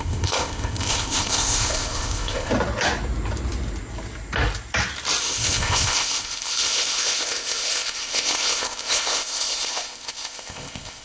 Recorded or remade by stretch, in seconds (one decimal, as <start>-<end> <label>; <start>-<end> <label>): 0.0-2.5 remade; 2.5-5.2 recorded; 5.2-11.0 remade